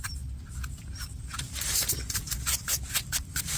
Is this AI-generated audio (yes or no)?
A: yes